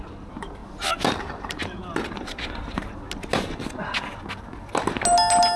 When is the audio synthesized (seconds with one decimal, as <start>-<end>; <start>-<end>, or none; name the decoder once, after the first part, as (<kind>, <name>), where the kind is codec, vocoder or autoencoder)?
0.0-0.6 (vocoder, BigVGAN v2); 1.2-1.8